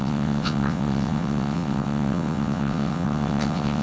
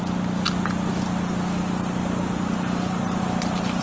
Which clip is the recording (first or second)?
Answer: second